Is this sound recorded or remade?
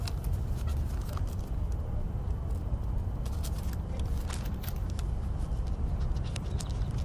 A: recorded